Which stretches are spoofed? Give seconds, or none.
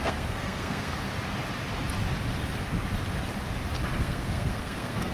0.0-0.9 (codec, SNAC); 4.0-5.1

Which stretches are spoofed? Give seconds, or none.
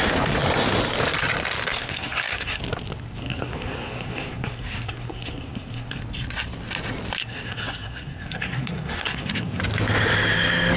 1.8-2.6 (codec, SNAC); 3.2-6.0; 7.2-9.6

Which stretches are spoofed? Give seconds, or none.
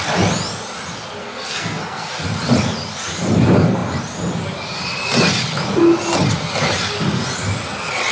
1.2-2.1 (codec, SNAC)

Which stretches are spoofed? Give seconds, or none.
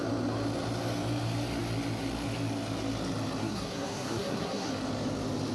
3.4-4.7 (codec, SNAC)